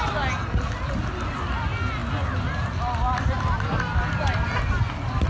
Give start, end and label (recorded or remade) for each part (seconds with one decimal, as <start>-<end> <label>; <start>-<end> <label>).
0.0-5.3 recorded